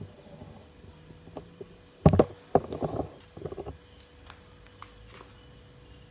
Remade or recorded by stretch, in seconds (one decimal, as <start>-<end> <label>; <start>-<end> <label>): 0.0-6.1 recorded